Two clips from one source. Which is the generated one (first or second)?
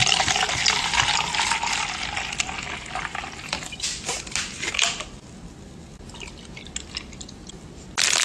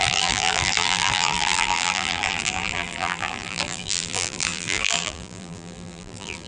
second